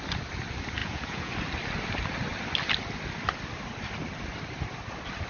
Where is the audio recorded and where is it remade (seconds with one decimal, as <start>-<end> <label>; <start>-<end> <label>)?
0.0-0.8 recorded; 0.8-1.3 remade; 1.3-5.3 recorded